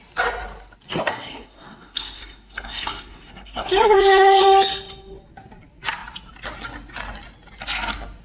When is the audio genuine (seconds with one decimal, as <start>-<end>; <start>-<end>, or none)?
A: 0.0-1.1; 4.4-8.2